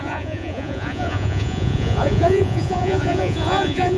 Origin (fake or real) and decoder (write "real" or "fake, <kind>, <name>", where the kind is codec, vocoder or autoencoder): fake, vocoder, Vocos